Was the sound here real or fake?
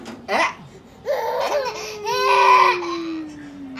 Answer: real